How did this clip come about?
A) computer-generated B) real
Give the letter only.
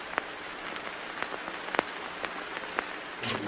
B